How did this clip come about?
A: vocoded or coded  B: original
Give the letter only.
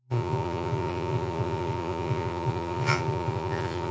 A